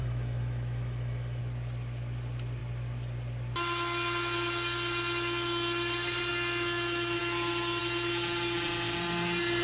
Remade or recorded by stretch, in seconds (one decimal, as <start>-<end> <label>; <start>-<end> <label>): 0.0-1.4 remade; 1.4-9.6 recorded